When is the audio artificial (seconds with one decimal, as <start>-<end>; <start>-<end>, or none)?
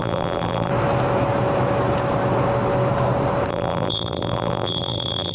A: 0.0-0.7; 3.5-5.3